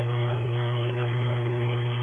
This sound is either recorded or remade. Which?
remade